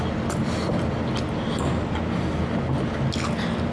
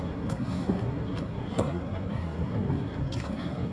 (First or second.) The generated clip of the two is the second